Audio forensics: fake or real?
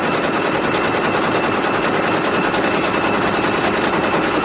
real